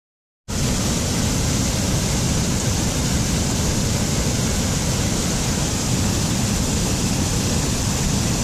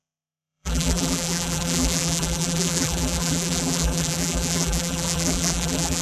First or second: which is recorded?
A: first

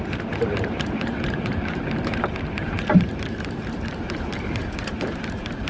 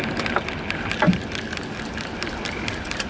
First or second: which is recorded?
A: second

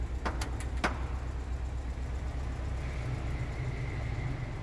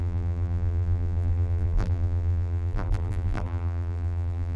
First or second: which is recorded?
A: first